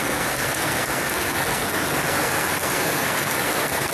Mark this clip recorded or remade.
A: remade